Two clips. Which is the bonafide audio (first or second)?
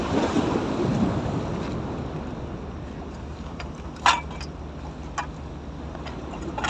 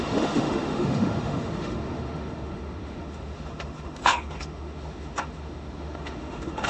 first